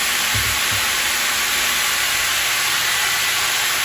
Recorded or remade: recorded